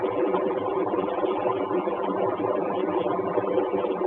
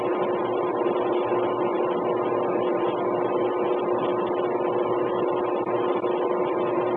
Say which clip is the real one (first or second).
second